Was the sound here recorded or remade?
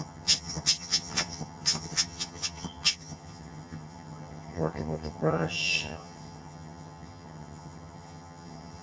remade